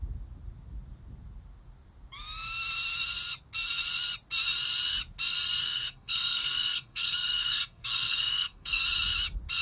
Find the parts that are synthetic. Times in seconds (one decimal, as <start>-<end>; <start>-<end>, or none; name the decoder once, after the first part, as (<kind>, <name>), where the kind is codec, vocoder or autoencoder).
5.6-8.8 (codec, SNAC)